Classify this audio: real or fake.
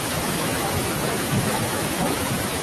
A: fake